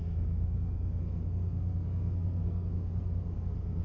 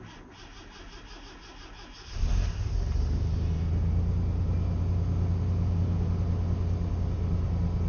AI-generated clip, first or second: first